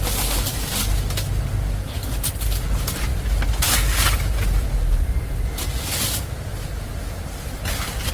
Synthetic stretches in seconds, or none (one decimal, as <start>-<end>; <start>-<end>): none